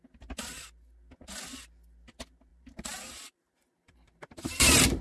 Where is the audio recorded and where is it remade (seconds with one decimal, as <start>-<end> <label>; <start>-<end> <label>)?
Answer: 0.0-2.5 recorded; 2.5-5.0 remade

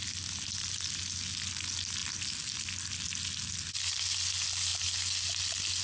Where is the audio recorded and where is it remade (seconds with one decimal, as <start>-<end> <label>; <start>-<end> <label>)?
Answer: 0.0-5.8 recorded